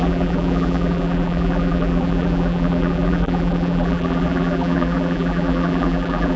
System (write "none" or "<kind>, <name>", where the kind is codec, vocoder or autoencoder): vocoder, BigVGAN v2